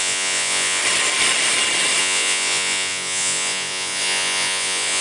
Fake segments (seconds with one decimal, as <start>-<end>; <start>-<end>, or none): 0.0-0.8; 2.0-5.0